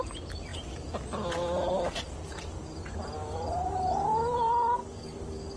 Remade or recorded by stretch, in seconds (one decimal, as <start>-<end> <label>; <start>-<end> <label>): 0.0-4.8 recorded; 4.8-5.6 remade